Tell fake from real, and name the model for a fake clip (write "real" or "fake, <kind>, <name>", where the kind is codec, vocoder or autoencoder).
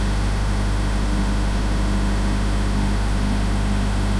fake, autoencoder, DAC-VAE